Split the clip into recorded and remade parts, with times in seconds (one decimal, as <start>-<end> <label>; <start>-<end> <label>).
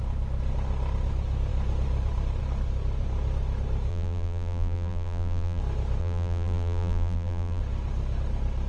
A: 0.0-3.9 recorded; 3.9-5.6 remade; 5.6-6.0 recorded; 6.0-7.6 remade; 7.6-8.7 recorded